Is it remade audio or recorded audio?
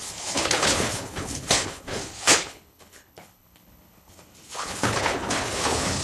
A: remade